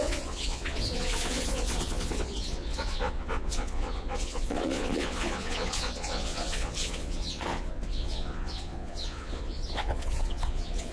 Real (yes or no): no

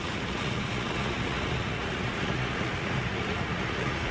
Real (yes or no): no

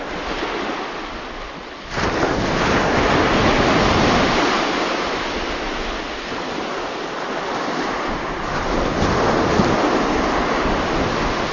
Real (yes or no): yes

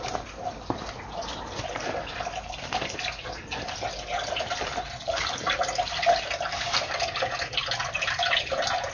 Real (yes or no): yes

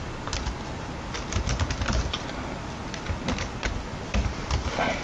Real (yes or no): yes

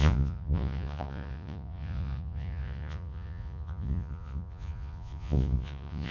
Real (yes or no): no